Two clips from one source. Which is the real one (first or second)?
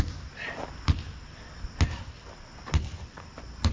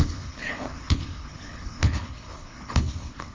first